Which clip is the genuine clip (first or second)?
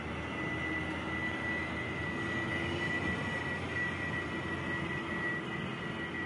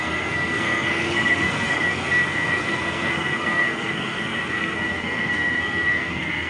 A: first